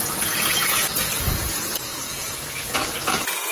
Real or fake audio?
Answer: fake